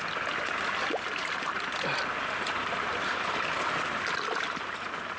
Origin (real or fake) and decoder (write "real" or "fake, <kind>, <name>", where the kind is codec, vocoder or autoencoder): real